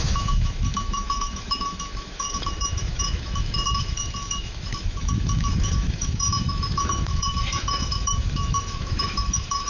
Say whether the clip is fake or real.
fake